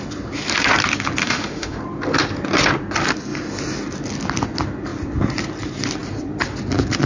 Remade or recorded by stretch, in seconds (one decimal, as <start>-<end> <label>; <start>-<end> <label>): 0.0-1.2 recorded; 1.2-1.8 remade; 1.8-7.1 recorded